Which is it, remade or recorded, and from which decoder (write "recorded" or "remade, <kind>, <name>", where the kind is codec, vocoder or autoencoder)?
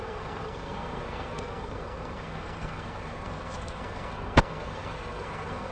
remade, codec, SNAC